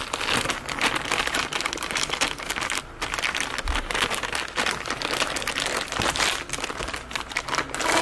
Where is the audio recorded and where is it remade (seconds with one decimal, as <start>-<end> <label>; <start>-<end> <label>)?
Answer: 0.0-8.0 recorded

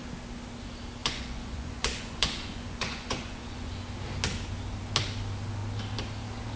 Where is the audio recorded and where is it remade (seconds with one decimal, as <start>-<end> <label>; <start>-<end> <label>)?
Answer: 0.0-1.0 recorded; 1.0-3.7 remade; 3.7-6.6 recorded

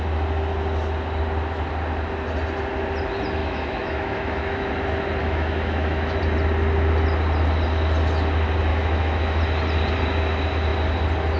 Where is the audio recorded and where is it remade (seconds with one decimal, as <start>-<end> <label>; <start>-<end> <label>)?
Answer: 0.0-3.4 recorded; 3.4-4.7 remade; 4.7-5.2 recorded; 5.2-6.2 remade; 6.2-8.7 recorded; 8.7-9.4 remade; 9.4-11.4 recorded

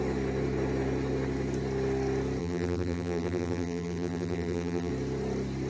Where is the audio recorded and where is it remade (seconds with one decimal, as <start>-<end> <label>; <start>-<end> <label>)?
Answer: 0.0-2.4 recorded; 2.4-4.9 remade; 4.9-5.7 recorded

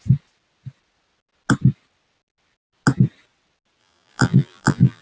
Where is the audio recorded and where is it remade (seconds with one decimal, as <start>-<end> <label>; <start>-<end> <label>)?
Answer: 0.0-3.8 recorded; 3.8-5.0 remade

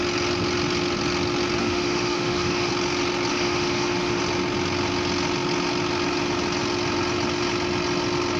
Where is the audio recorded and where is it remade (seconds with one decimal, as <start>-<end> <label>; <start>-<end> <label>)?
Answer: 0.0-1.6 recorded; 1.6-2.7 remade; 2.7-3.3 recorded; 3.3-4.2 remade; 4.2-8.4 recorded

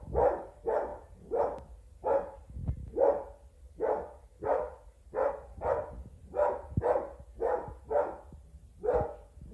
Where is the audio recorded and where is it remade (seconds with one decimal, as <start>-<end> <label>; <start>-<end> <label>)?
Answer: 0.0-9.5 recorded